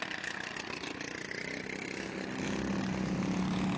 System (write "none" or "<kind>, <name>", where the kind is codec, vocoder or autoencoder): none